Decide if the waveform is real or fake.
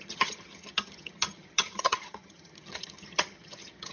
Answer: fake